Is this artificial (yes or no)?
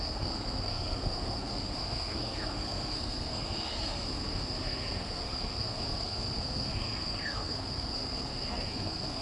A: yes